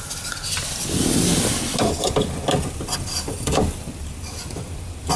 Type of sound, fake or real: real